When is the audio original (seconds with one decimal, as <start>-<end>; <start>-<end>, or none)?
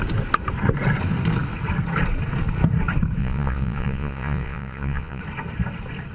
0.0-3.2; 5.2-6.1